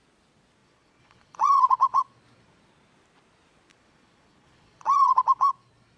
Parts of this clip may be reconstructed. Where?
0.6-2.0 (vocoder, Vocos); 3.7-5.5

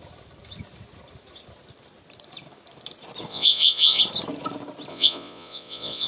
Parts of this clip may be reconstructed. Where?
3.3-4.0 (vocoder, Vocos); 4.9-6.1

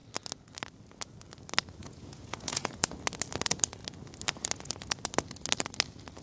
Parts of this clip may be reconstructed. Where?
1.8-2.9 (vocoder, Vocos)

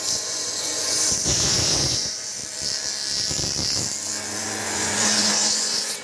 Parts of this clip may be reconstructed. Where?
0.0-2.4 (vocoder, Vocos); 4.3-6.0